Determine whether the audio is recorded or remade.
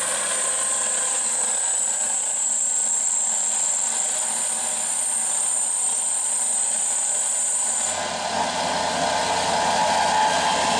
recorded